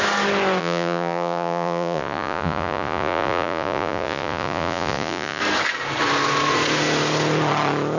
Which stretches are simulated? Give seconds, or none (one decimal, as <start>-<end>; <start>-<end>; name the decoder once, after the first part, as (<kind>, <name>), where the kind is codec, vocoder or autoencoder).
0.6-5.4 (vocoder, Vocos)